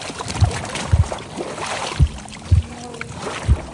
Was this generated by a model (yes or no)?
no